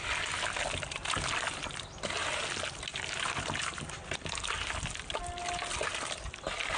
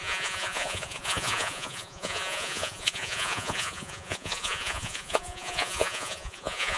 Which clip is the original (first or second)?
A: first